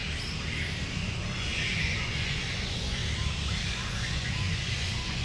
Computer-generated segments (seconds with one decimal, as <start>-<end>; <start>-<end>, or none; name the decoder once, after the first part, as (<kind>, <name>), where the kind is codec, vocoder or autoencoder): 0.9-3.0 (vocoder, Vocos); 3.6-5.2